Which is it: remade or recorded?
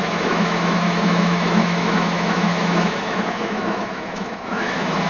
remade